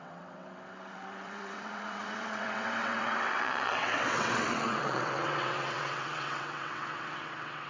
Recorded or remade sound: remade